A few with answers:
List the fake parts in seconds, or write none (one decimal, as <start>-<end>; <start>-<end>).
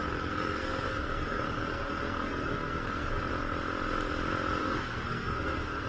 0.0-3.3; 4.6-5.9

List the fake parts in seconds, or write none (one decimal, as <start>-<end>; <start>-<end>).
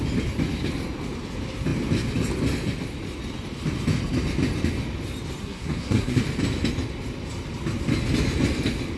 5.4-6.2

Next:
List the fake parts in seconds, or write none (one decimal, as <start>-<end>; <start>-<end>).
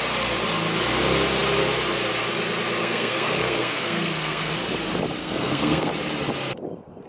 2.8-4.5; 5.2-5.9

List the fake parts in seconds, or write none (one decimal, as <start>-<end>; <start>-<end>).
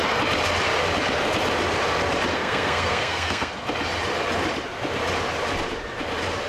2.3-3.5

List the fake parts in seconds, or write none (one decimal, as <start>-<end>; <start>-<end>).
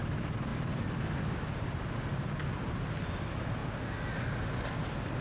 none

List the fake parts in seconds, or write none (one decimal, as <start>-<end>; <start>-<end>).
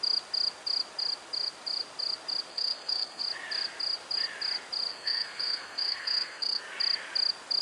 2.5-3.2; 4.9-6.6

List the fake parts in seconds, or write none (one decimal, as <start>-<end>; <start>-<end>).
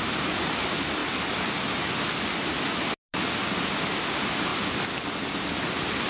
none